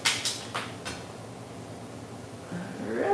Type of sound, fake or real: real